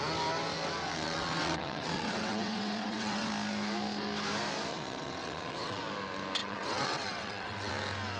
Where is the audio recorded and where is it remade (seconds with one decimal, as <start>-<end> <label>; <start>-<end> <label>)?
0.0-0.9 recorded; 0.9-3.3 remade; 3.3-4.7 recorded; 4.7-5.8 remade; 5.8-6.4 recorded; 6.4-7.7 remade; 7.7-8.2 recorded